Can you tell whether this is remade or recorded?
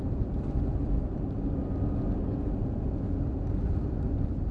recorded